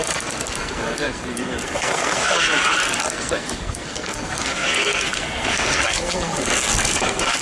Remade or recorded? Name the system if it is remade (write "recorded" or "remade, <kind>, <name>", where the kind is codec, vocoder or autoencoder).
remade, codec, SNAC